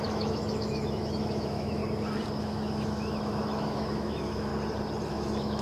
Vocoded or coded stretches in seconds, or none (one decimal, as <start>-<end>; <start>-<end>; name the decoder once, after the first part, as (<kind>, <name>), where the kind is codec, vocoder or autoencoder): 0.0-1.8 (autoencoder, DAC-VAE); 2.4-4.5; 5.1-5.6

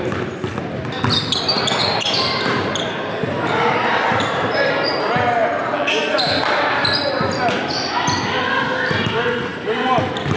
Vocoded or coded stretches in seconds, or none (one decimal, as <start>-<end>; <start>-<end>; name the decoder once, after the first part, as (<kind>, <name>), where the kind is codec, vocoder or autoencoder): 1.8-4.7 (vocoder, BigVGAN v2)

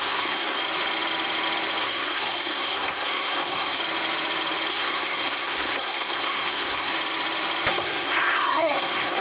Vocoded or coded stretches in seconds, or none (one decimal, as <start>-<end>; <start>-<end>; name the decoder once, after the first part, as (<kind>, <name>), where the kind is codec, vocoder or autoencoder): 0.0-0.6 (codec, SNAC); 1.8-3.8; 4.7-6.9; 7.7-9.2

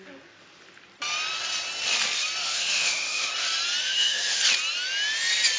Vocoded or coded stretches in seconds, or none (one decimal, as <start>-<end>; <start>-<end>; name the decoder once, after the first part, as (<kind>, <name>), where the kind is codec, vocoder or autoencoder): 2.4-3.3 (autoencoder, DAC-VAE); 3.8-4.4

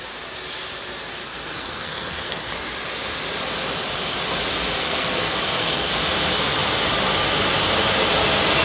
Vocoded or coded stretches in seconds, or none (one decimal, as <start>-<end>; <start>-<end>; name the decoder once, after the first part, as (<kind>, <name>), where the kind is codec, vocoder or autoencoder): 1.2-2.5 (codec, SNAC); 4.8-5.9

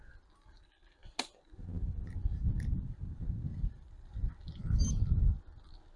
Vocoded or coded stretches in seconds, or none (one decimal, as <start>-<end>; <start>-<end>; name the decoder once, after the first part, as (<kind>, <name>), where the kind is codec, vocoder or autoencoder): 3.5-4.3 (vocoder, BigVGAN v2)

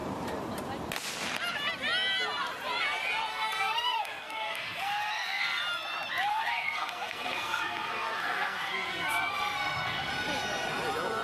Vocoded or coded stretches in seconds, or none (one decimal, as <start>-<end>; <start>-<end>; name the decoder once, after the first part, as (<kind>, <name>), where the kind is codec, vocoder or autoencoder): 3.3-5.6 (codec, SNAC); 6.3-10.1

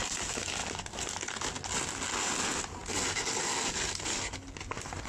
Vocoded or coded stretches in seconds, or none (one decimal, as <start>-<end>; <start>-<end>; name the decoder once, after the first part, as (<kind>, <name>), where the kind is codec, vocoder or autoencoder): none